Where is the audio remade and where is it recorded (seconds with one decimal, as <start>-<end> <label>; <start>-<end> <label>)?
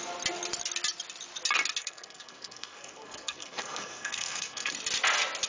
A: 0.0-1.8 recorded; 1.8-4.7 remade; 4.7-5.5 recorded